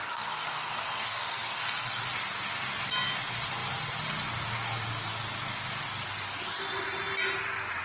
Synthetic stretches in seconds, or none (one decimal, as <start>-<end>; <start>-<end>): 0.0-2.0